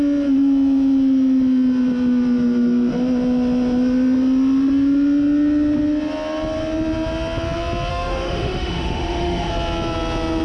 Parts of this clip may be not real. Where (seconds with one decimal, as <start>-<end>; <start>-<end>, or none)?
7.9-9.5